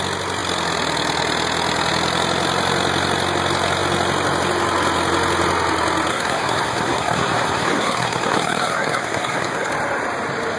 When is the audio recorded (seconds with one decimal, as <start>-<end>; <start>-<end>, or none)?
0.0-6.1; 9.7-10.6

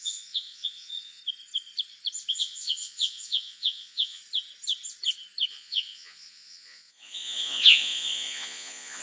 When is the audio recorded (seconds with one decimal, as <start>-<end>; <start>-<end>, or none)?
1.2-2.3; 4.2-5.5

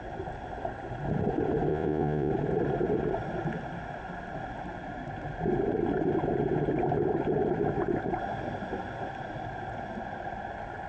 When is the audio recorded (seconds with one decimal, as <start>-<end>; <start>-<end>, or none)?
0.0-1.7; 2.3-10.9

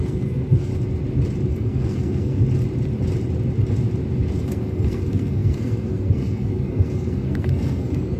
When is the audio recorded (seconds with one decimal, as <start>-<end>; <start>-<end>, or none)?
0.7-1.5; 2.4-4.4